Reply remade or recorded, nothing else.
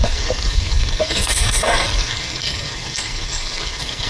remade